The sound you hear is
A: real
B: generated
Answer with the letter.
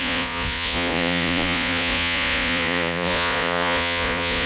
B